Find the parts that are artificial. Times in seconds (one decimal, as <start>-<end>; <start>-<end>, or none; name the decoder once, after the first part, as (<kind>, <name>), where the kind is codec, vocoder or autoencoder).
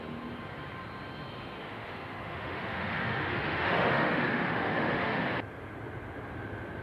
1.6-5.2 (autoencoder, DAC-VAE)